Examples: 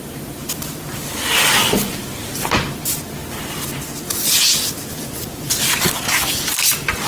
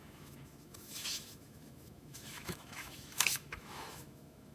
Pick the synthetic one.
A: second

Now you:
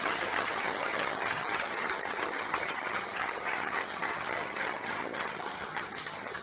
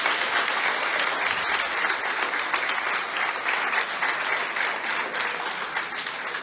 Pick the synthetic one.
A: first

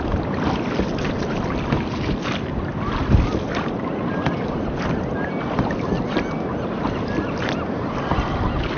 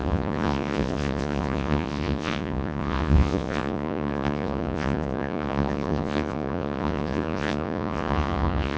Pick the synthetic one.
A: second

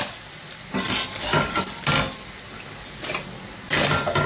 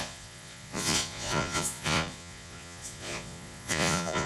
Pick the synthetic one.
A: second